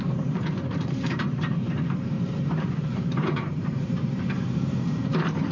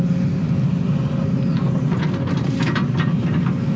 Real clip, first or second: second